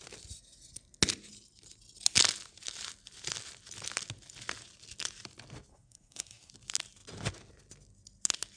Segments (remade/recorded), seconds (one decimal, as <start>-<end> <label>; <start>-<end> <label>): 0.0-5.7 recorded; 5.7-6.5 remade; 6.5-8.6 recorded